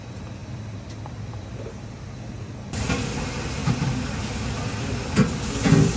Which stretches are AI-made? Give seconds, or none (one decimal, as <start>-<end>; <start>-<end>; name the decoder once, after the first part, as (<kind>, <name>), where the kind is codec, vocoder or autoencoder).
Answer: 3.6-4.2 (vocoder, BigVGAN v2)